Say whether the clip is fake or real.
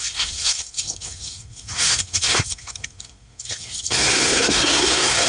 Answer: fake